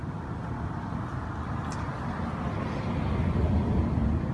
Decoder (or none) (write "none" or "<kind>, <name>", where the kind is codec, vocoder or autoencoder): none